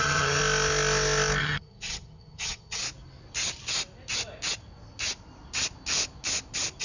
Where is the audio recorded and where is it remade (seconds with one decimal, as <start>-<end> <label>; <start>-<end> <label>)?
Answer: 0.0-0.4 remade; 0.4-1.4 recorded; 1.4-2.8 remade; 2.8-6.8 recorded

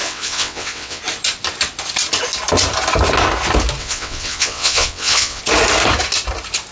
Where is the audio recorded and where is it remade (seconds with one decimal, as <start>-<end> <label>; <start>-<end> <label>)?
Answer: 0.0-1.0 remade; 1.0-3.8 recorded; 3.8-5.4 remade; 5.4-6.7 recorded

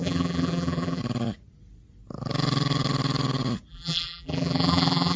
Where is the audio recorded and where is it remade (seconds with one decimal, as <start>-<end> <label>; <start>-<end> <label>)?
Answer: 0.0-1.0 remade; 1.0-3.7 recorded; 3.7-5.2 remade

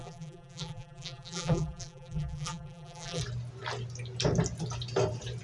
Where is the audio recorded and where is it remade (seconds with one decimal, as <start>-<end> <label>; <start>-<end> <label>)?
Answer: 0.0-3.2 remade; 3.2-5.4 recorded